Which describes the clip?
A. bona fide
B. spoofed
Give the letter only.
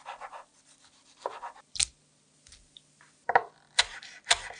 A